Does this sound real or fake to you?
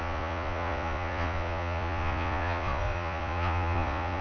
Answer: fake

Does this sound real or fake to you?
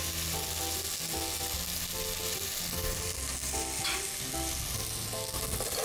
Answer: real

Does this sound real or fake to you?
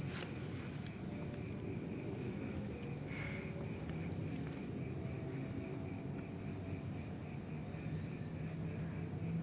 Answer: real